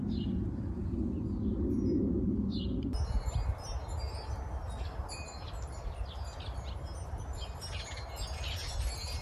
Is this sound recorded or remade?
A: recorded